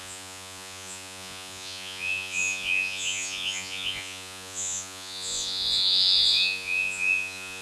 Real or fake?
fake